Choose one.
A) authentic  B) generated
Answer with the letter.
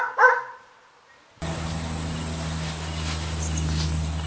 A